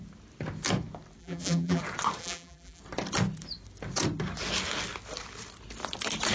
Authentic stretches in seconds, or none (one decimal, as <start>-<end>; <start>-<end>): 0.0-1.2; 1.8-2.2; 2.8-6.3